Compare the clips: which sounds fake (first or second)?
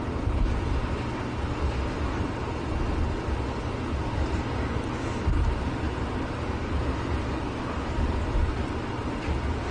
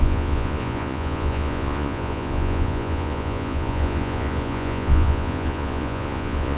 second